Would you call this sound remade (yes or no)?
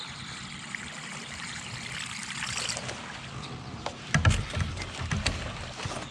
no